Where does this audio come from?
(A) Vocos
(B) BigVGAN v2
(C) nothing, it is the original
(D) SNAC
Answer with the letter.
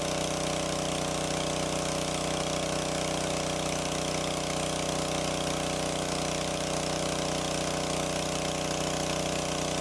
C